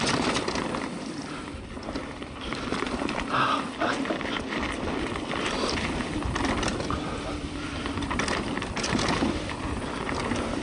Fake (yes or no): yes